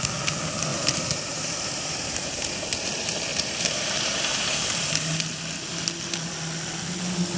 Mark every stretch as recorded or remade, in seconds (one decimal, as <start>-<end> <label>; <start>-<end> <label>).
0.0-0.7 recorded; 0.7-2.9 remade; 2.9-3.3 recorded; 3.3-4.9 remade; 4.9-7.4 recorded